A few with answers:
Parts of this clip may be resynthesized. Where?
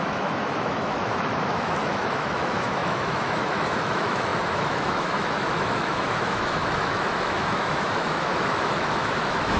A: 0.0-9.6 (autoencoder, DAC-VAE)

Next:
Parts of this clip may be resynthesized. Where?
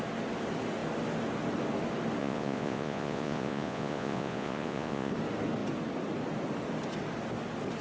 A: 2.2-5.1 (vocoder, Vocos)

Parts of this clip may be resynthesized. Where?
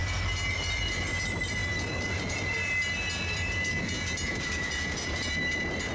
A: 0.5-1.6 (vocoder, BigVGAN v2); 4.4-5.9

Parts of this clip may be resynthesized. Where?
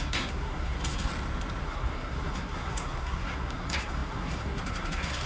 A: 0.0-1.1 (codec, SNAC); 1.6-5.3